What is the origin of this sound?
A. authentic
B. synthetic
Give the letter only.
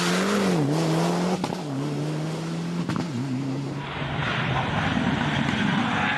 A